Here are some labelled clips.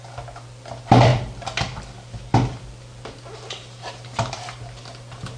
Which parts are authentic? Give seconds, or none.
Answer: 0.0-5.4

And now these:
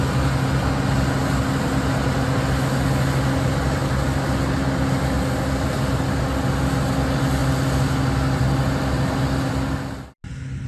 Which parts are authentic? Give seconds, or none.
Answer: 0.0-10.7